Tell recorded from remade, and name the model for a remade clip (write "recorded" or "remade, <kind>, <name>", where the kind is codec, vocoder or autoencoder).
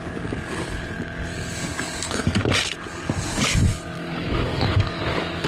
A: remade, codec, DAC